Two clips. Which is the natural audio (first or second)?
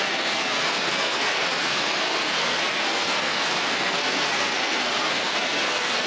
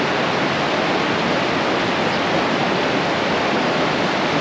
second